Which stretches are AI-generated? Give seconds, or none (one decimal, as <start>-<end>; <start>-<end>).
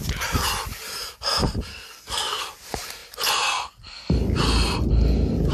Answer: 1.7-2.4